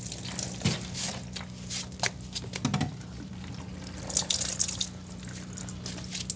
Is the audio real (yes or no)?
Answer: yes